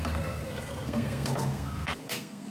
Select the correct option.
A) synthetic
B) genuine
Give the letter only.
A